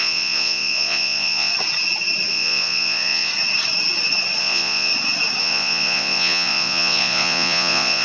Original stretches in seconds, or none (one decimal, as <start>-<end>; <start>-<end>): 1.5-2.3; 3.3-4.4; 4.9-5.4